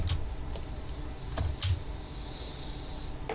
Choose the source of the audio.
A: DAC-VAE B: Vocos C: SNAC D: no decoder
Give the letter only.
D